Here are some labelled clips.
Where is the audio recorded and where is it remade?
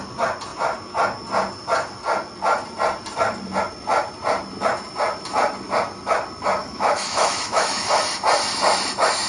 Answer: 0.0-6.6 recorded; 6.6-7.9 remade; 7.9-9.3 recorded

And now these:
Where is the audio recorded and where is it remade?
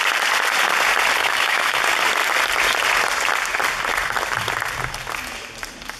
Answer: 0.0-1.2 recorded; 1.2-1.8 remade; 1.8-6.0 recorded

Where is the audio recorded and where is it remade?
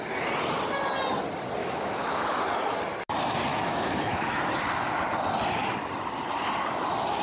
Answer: 0.0-1.6 recorded; 1.6-2.4 remade; 2.4-3.5 recorded; 3.5-4.4 remade; 4.4-7.2 recorded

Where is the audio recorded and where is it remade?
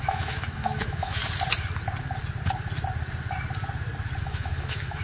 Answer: 0.0-1.2 remade; 1.2-4.2 recorded; 4.2-5.0 remade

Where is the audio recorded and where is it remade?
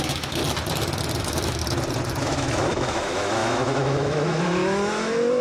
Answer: 0.0-0.4 remade; 0.4-1.2 recorded; 1.2-1.6 remade; 1.6-2.2 recorded; 2.2-5.4 remade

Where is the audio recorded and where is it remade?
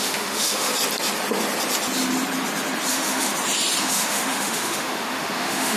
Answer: 0.0-0.7 remade; 0.7-2.9 recorded; 2.9-3.3 remade; 3.3-3.8 recorded; 3.8-5.8 remade